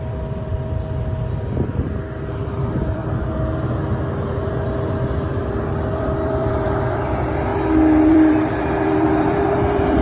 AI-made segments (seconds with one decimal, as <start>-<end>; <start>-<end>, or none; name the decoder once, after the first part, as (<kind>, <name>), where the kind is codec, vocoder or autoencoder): 0.0-0.5 (vocoder, BigVGAN v2); 2.2-3.0; 5.5-7.5; 8.1-10.0

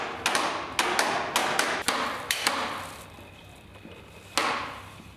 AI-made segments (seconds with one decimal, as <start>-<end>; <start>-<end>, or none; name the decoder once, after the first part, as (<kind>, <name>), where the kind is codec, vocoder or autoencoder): 1.4-3.7 (vocoder, BigVGAN v2)

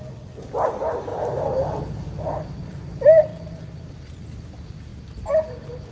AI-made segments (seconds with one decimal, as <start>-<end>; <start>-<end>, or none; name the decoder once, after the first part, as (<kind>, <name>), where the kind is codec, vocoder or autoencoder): 0.0-4.9 (vocoder, BigVGAN v2); 5.5-5.9